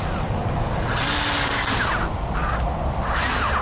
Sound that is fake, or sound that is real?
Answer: real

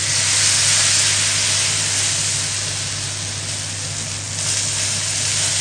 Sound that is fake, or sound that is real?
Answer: real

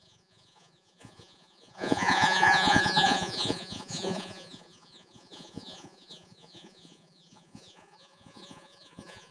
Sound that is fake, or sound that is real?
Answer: fake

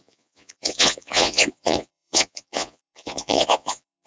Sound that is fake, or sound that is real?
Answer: fake